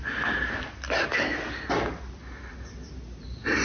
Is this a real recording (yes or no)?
yes